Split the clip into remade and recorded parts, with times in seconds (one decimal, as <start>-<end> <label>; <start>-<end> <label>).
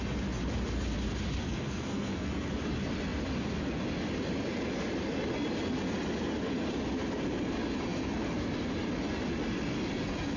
0.0-1.4 recorded; 1.4-2.3 remade; 2.3-10.4 recorded